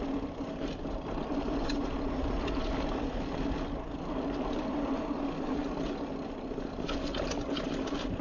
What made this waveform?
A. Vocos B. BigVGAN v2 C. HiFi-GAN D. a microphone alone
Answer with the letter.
D